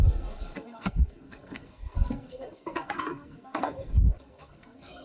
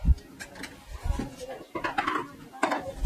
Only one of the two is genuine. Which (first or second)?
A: second